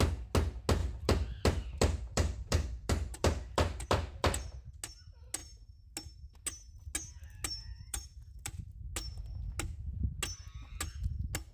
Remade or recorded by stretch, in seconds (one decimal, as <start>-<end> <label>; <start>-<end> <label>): 0.0-0.8 recorded; 0.8-4.7 remade; 4.7-7.9 recorded; 7.9-8.8 remade; 8.8-11.5 recorded